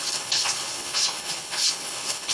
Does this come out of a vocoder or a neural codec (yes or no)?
yes